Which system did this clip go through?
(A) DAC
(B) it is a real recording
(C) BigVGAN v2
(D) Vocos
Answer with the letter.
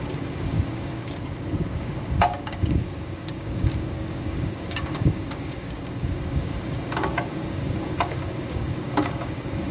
A